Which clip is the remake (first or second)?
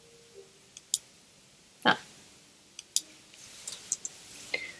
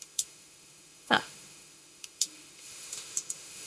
second